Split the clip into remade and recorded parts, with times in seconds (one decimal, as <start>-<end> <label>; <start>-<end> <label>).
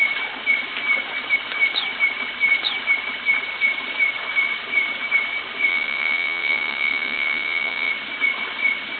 0.0-5.7 recorded; 5.7-7.9 remade; 7.9-9.0 recorded